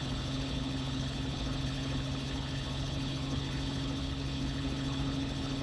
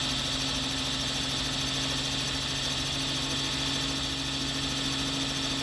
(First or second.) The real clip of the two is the second